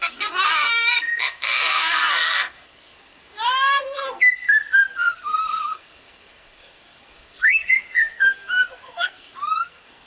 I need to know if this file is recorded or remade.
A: remade